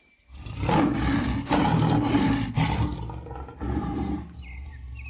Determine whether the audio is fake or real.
real